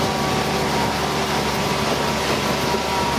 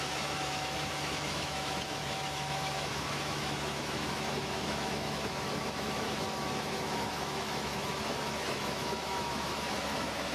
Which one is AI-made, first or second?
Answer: second